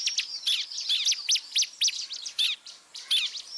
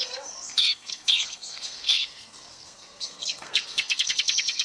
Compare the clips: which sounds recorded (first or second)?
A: first